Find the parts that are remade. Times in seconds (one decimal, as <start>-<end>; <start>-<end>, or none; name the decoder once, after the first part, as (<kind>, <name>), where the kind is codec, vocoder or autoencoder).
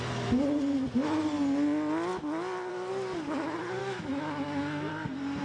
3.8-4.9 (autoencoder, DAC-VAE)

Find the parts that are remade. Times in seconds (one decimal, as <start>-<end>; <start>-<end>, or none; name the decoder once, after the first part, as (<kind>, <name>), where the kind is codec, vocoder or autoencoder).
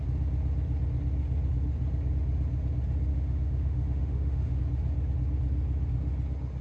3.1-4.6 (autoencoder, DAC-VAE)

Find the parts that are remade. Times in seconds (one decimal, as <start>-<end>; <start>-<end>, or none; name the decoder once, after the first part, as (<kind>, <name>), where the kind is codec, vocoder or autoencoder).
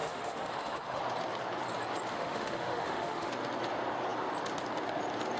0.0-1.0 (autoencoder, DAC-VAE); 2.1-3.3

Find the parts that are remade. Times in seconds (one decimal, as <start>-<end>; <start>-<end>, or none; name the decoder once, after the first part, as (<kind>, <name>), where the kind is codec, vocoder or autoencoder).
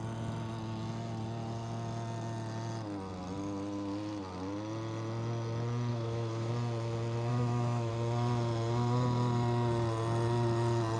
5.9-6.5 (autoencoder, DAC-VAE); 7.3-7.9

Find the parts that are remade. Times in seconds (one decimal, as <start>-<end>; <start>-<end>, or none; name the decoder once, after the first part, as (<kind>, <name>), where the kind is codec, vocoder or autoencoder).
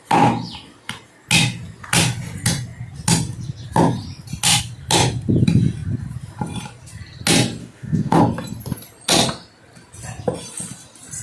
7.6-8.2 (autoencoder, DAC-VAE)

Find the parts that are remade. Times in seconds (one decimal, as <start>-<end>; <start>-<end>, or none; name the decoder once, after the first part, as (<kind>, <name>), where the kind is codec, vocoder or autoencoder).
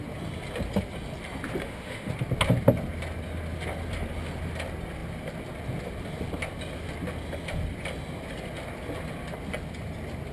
1.6-2.1 (autoencoder, DAC-VAE)